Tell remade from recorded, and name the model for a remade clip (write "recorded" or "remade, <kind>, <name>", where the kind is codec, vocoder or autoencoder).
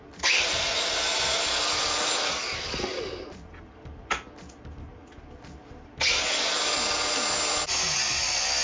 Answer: recorded